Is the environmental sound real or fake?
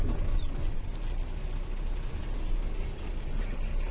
real